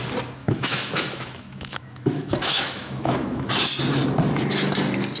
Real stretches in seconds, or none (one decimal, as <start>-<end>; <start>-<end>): 0.0-0.4; 3.5-5.2